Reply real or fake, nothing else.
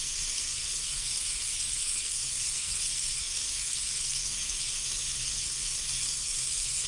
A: fake